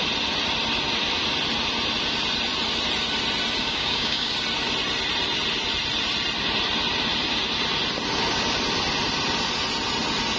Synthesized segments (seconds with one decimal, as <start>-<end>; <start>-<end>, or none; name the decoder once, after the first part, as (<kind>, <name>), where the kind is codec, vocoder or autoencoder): 3.6-4.3 (codec, DAC)